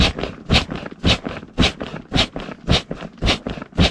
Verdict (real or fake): real